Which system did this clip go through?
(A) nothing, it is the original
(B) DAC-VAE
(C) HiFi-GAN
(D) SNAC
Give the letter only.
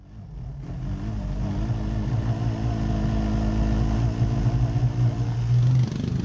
A